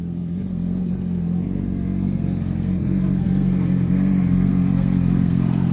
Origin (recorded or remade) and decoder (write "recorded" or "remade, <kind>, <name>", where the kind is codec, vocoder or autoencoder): remade, codec, SNAC